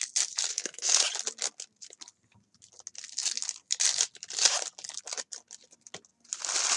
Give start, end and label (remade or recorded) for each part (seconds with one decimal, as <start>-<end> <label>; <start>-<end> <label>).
0.0-0.5 recorded; 0.5-1.0 remade; 1.0-6.8 recorded